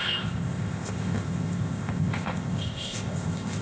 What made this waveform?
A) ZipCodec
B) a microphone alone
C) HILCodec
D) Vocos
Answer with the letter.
A